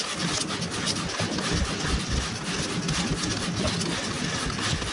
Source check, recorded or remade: recorded